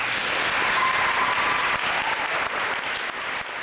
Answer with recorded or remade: recorded